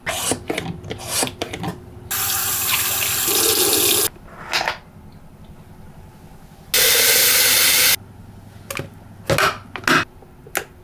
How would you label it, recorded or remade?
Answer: recorded